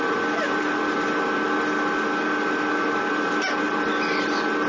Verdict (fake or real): real